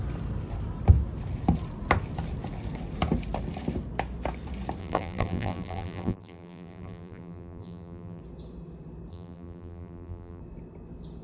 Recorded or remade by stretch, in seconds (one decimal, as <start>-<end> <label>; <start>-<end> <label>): 0.0-4.8 recorded; 4.8-8.2 remade; 8.2-9.1 recorded; 9.1-10.4 remade; 10.4-11.2 recorded